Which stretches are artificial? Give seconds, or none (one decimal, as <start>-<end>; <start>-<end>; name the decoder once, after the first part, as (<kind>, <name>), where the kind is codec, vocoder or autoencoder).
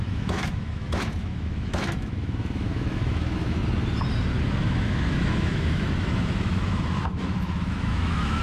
0.0-3.6 (autoencoder, DAC-VAE); 4.6-8.4